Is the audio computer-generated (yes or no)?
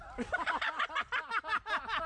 no